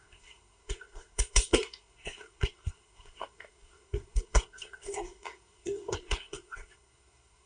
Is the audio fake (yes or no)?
yes